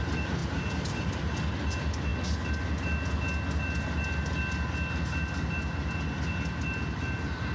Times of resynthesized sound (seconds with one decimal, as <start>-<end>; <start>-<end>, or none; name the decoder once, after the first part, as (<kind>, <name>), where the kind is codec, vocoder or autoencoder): none